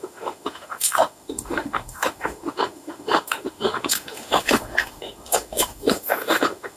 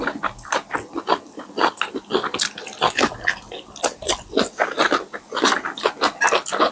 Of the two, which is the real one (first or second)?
second